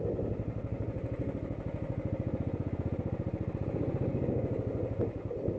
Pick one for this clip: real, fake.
real